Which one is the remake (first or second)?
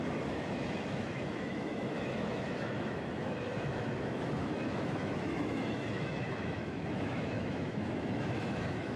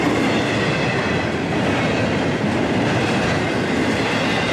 first